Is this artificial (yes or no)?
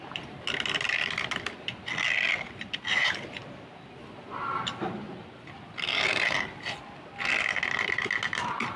no